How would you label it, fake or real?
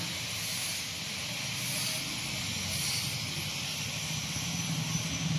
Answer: real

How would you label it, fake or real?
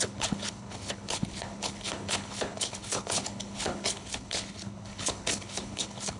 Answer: fake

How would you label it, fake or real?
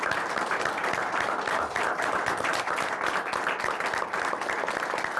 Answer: real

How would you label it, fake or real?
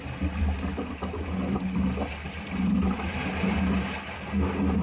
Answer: real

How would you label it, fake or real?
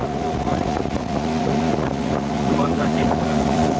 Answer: fake